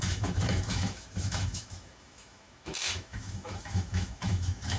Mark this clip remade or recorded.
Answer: remade